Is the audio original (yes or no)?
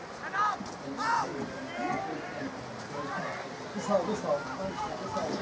yes